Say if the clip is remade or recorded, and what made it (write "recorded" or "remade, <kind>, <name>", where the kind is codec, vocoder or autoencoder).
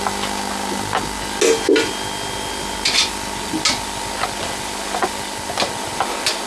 recorded